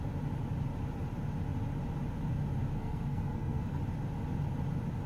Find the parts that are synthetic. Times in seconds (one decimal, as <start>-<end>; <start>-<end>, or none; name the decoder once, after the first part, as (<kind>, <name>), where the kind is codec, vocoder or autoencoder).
2.7-3.8 (codec, SNAC)